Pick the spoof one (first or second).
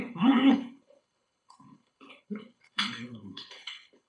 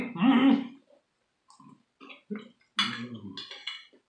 first